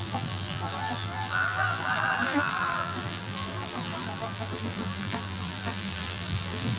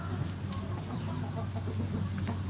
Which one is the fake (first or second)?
first